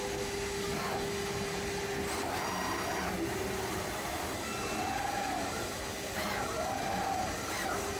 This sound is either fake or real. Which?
real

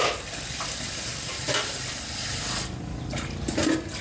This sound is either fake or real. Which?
real